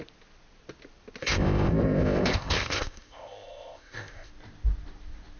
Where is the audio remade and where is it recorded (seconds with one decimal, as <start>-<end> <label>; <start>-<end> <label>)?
0.0-1.2 recorded; 1.2-4.3 remade; 4.3-5.4 recorded